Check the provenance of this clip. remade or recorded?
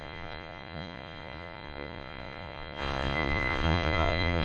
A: remade